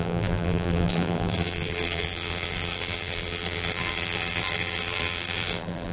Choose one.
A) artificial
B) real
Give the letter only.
A